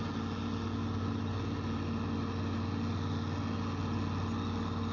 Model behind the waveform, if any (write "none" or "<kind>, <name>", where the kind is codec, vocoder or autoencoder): none